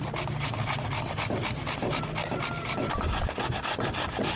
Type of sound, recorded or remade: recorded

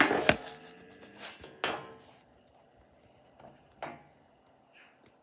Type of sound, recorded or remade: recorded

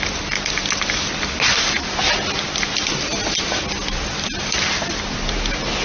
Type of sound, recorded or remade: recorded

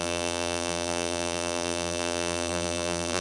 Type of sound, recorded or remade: remade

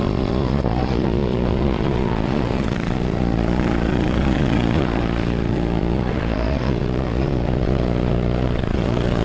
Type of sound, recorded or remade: remade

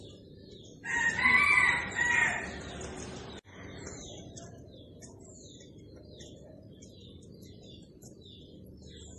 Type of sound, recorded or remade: recorded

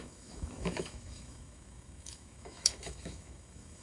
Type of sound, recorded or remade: remade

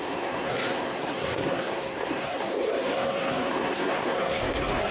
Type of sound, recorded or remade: remade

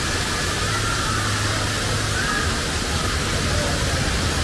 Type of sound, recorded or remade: recorded